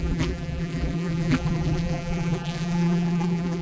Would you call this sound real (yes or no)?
no